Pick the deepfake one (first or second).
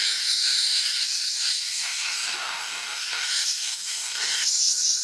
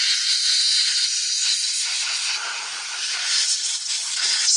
first